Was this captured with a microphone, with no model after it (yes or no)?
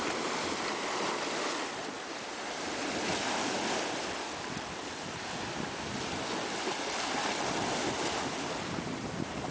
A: yes